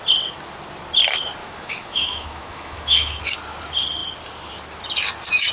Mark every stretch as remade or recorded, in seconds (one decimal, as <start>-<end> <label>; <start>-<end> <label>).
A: 0.0-1.4 recorded; 1.4-3.2 remade; 3.2-5.5 recorded